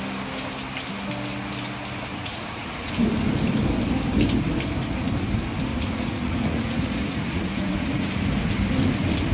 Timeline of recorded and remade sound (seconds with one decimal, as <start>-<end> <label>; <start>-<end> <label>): 0.0-2.1 recorded; 2.1-2.9 remade; 2.9-5.7 recorded; 5.7-8.1 remade; 8.1-9.3 recorded